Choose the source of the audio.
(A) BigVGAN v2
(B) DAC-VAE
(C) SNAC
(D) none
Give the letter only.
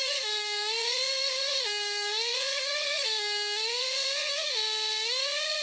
C